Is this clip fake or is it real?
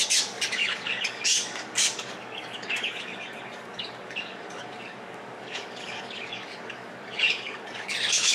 fake